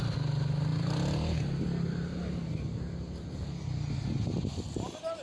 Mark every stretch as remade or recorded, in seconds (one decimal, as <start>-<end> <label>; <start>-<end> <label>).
0.0-5.2 recorded